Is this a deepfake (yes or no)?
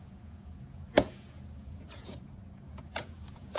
yes